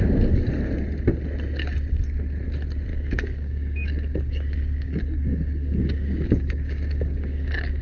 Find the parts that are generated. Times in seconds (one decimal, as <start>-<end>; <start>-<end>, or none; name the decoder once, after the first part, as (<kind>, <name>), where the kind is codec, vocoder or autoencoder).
2.9-7.8 (codec, DAC)